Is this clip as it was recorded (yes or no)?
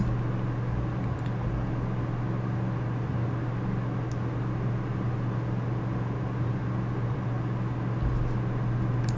yes